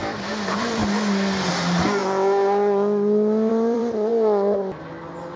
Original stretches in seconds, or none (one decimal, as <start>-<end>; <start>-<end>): 0.8-1.5; 2.0-3.5; 4.1-5.4